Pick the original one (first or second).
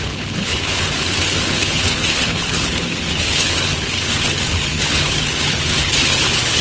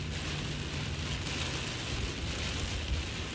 second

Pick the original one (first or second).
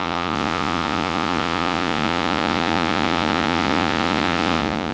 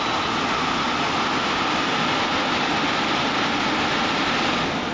second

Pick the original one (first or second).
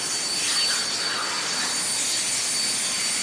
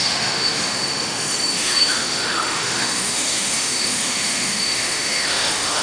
first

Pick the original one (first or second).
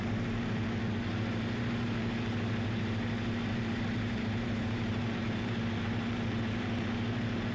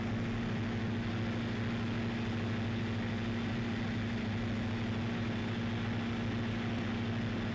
second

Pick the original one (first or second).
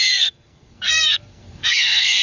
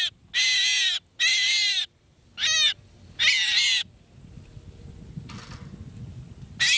second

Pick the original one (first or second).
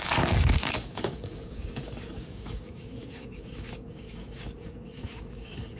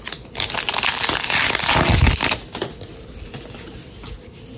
second